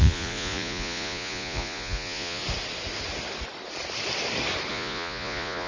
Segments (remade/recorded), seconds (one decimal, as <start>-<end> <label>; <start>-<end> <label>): 0.0-2.4 remade; 2.4-4.7 recorded; 4.7-5.7 remade